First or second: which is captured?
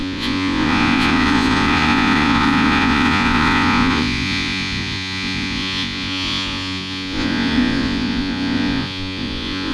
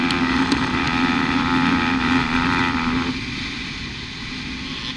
second